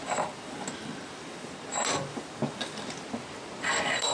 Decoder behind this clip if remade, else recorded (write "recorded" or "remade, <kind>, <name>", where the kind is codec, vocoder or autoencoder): recorded